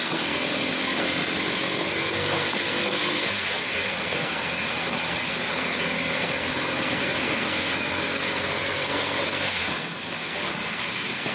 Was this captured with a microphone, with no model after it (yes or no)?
no